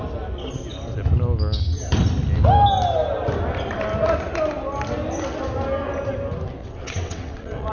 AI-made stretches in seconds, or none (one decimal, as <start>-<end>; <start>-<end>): 6.6-7.7